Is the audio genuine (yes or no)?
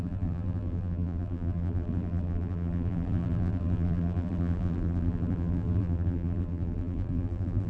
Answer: no